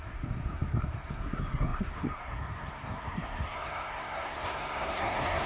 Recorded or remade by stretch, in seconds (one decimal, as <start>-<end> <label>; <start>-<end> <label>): 0.0-5.5 remade